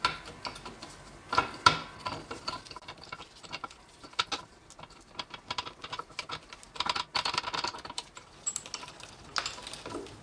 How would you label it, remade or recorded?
recorded